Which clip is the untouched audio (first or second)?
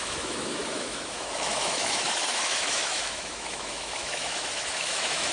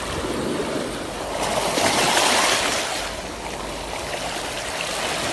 second